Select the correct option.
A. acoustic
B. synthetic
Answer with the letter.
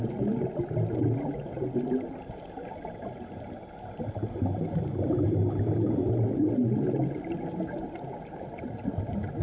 A